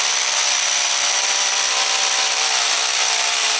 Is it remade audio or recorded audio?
remade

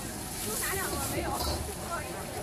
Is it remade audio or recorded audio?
recorded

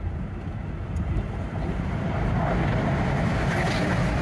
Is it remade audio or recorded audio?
recorded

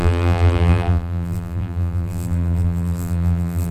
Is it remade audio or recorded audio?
remade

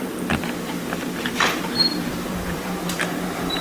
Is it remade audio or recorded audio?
remade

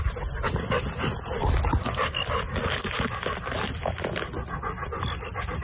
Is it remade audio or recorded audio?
recorded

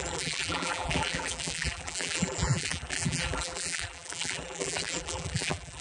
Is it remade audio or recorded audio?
remade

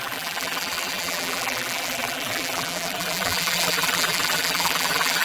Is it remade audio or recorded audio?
remade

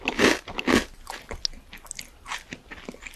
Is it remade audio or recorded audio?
recorded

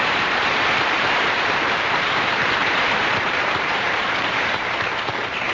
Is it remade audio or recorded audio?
remade